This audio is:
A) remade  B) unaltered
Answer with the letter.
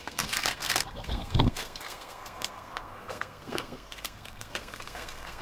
A